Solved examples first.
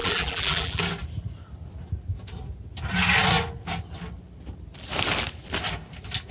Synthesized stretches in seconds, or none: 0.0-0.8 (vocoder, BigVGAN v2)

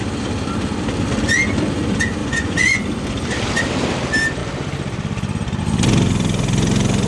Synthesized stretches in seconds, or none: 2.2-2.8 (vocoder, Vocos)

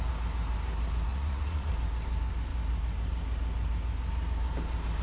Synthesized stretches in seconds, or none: 1.1-1.7 (vocoder, Vocos)

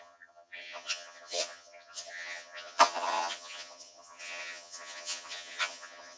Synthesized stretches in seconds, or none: 0.0-6.2 (vocoder, HiFi-GAN)

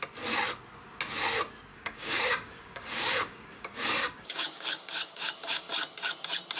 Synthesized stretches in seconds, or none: 1.7-5.7 (codec, DAC)